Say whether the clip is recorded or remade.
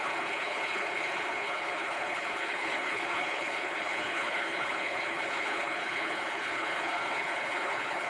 remade